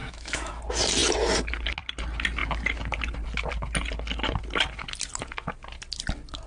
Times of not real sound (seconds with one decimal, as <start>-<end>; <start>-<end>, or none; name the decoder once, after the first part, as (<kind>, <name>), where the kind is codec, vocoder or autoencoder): 0.0-0.6 (autoencoder, DAC-VAE)